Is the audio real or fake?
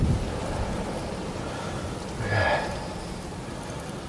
real